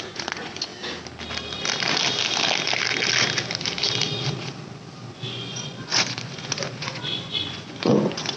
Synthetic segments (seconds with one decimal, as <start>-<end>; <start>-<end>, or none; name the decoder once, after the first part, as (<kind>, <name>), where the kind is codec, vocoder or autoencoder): 0.0-0.7 (vocoder, Vocos); 5.1-8.4

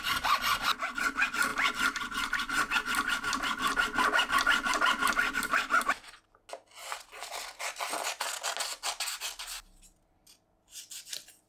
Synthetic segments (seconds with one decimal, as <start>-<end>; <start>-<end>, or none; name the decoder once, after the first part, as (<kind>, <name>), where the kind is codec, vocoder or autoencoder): none

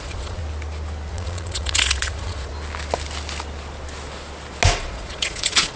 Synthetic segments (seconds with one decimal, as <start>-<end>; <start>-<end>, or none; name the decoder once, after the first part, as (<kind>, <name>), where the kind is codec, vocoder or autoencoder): 0.0-0.4 (vocoder, Vocos); 1.1-2.5; 4.7-5.8

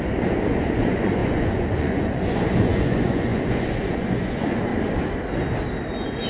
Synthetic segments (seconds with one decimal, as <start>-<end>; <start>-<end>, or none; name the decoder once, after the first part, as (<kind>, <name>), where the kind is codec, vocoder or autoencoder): 0.0-4.7 (vocoder, Vocos)

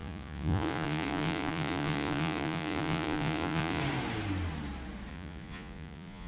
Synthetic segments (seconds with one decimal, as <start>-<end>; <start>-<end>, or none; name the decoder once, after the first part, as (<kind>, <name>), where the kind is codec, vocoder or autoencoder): 0.0-3.8 (vocoder, Vocos); 5.1-6.3